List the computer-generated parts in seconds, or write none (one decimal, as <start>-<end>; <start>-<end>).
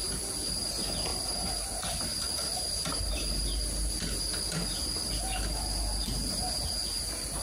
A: none